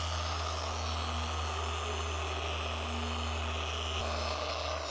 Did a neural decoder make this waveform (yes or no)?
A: no